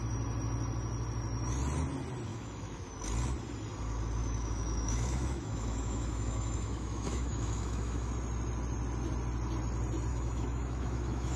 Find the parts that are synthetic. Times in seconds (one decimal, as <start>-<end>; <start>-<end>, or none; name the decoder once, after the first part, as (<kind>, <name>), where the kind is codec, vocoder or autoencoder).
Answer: 2.3-2.9 (autoencoder, DAC-VAE); 4.2-8.1; 10.1-11.4